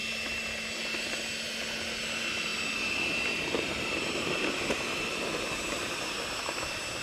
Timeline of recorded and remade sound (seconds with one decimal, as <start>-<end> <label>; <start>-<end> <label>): 0.0-7.0 recorded